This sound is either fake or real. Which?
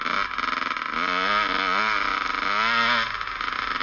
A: real